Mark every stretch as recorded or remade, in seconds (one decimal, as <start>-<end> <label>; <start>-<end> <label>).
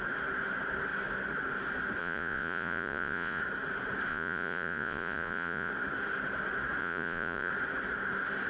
0.0-2.0 recorded; 2.0-3.4 remade; 3.4-4.1 recorded; 4.1-5.7 remade; 5.7-6.8 recorded; 6.8-7.5 remade; 7.5-8.5 recorded